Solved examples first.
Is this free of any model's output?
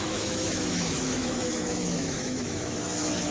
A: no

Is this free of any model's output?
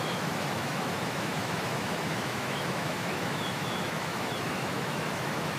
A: no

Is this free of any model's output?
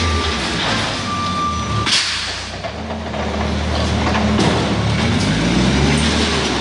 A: yes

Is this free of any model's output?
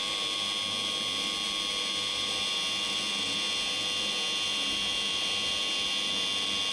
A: yes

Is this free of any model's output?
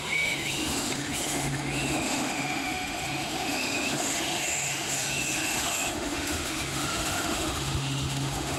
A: no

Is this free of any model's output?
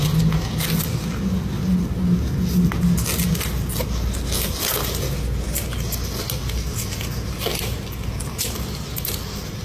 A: yes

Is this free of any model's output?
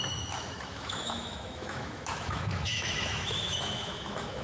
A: no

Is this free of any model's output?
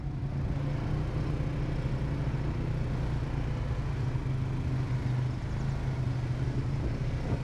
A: yes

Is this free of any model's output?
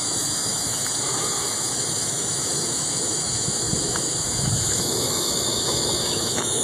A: no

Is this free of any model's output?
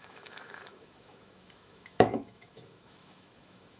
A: no